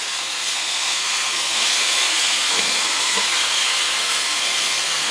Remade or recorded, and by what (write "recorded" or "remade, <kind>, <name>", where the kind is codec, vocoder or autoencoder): remade, codec, SNAC